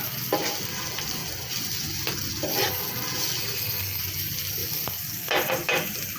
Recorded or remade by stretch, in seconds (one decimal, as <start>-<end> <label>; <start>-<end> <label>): 0.0-3.4 recorded; 3.4-4.0 remade; 4.0-6.2 recorded